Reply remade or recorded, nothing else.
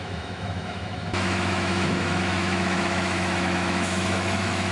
remade